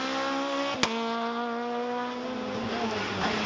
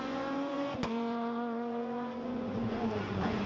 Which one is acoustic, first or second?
first